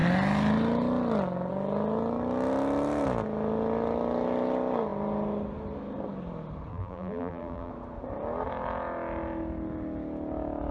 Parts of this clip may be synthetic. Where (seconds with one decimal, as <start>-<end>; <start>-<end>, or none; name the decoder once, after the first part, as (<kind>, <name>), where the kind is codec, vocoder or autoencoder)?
6.7-7.7 (vocoder, BigVGAN v2)